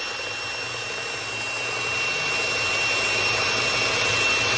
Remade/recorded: recorded